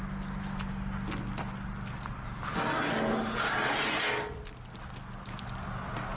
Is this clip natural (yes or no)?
yes